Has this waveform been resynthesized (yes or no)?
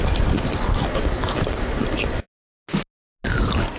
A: no